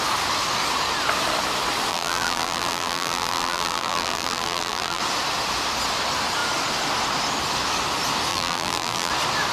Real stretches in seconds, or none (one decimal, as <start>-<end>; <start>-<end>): 0.0-1.9; 5.0-8.3; 9.1-9.5

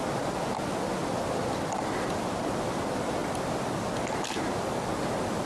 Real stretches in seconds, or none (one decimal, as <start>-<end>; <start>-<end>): 0.0-5.5

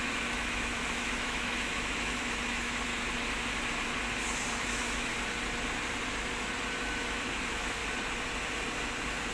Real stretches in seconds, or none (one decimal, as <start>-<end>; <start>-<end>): 2.9-4.6; 5.1-6.8; 7.8-9.3

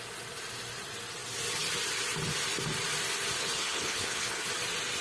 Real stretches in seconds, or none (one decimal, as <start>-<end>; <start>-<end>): 0.0-3.4; 4.5-5.0

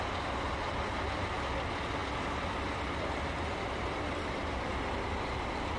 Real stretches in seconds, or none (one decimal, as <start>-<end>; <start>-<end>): 0.0-5.8

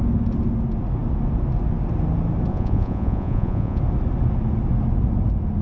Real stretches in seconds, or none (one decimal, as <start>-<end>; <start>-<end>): 0.0-2.5; 3.8-5.6

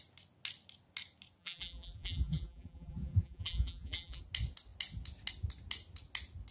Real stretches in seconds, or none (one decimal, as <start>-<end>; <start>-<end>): 0.0-1.4; 4.2-6.5

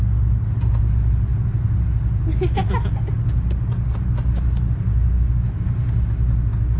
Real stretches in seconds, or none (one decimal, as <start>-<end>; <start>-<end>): 0.0-6.8